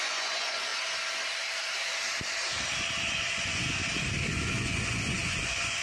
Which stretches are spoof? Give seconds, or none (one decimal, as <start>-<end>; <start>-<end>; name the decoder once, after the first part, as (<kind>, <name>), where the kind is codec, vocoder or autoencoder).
0.0-0.7 (vocoder, Vocos); 3.1-3.8; 4.3-5.8